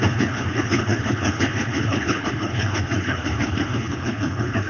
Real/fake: fake